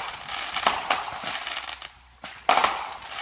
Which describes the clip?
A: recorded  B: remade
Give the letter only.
A